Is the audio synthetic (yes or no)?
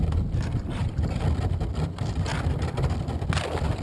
no